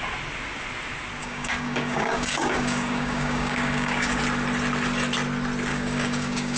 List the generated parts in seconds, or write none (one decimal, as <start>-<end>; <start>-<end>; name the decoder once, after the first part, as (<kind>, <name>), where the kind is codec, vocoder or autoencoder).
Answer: 1.2-4.2 (codec, DAC); 5.7-6.6